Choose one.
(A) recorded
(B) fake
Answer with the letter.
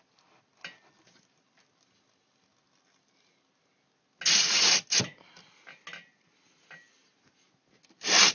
A